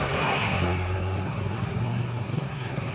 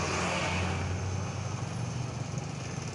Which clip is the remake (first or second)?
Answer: first